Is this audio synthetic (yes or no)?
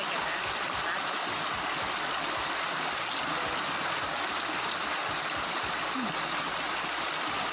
no